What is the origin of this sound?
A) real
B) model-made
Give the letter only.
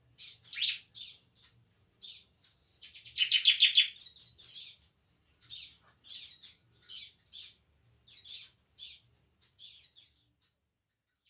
A